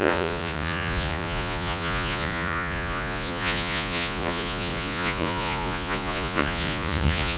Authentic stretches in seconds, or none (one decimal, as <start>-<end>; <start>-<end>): none